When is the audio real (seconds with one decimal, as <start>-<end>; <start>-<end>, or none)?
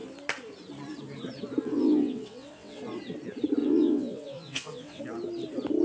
0.0-1.6; 2.8-3.6; 5.0-5.8